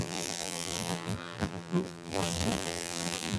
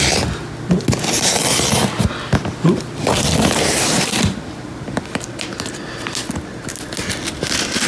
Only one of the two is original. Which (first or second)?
second